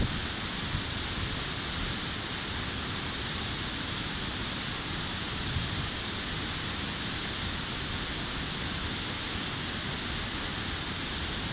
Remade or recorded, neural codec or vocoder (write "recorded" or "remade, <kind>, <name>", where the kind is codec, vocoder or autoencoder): recorded